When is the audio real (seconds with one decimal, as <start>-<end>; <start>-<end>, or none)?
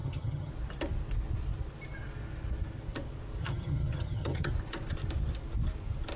0.5-3.4; 4.5-6.2